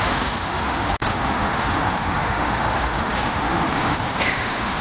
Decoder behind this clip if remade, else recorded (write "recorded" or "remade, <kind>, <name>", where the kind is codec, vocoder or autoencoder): remade, autoencoder, DAC-VAE